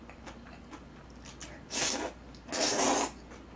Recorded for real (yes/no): yes